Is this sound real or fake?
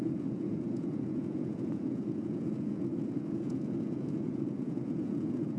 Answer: fake